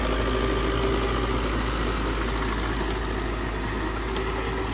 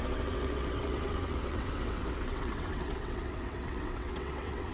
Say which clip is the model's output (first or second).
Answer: second